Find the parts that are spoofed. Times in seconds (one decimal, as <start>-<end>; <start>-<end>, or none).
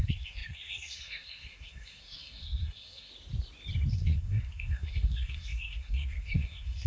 0.0-3.1; 3.9-6.9